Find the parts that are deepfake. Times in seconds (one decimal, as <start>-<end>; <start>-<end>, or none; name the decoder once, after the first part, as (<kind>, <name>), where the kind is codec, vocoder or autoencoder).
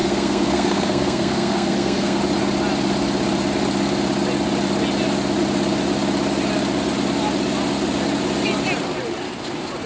0.0-2.2 (codec, SNAC)